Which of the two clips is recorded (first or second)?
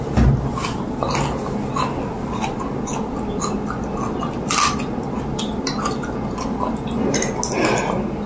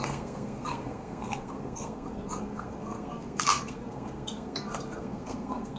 first